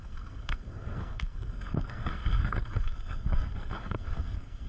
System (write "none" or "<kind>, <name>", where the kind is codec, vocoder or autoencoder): codec, SNAC